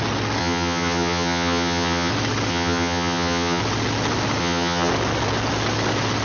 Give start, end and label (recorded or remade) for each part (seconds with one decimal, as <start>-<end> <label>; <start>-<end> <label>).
0.0-0.4 recorded; 0.4-2.1 remade; 2.1-2.5 recorded; 2.5-3.6 remade; 3.6-4.4 recorded; 4.4-4.9 remade; 4.9-6.2 recorded